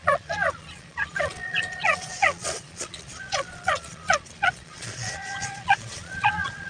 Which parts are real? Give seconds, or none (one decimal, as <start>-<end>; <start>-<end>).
none